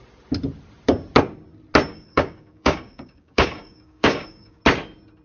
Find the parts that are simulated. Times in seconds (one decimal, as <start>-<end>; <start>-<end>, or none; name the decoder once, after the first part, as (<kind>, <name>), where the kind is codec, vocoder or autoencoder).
1.9-4.6 (codec, DAC)